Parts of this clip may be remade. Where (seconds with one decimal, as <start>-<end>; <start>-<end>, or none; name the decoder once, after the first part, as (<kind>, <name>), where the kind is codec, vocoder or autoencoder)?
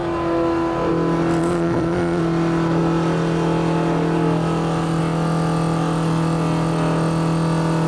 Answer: 1.4-2.2 (vocoder, Vocos)